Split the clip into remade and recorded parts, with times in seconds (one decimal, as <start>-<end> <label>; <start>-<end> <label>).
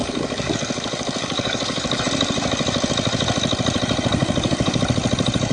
0.0-2.0 remade; 2.0-4.2 recorded; 4.2-4.8 remade; 4.8-5.5 recorded